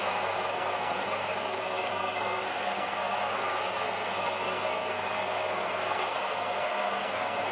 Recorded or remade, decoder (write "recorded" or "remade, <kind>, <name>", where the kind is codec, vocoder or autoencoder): remade, codec, SNAC